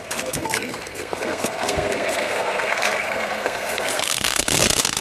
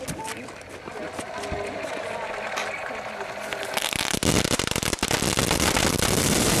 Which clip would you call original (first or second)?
second